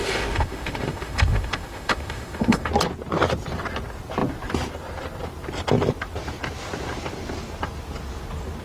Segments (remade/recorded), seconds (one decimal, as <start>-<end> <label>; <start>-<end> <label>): 0.0-2.7 remade; 2.7-8.6 recorded